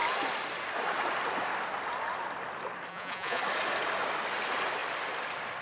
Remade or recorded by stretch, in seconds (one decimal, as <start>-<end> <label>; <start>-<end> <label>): 0.0-2.9 recorded; 2.9-3.4 remade; 3.4-5.6 recorded